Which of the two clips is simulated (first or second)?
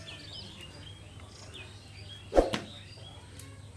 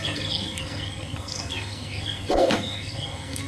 second